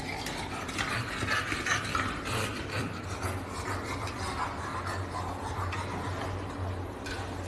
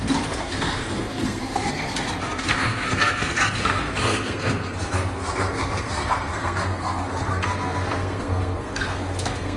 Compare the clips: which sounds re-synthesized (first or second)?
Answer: second